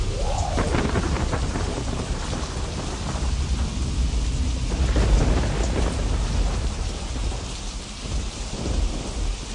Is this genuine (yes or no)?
yes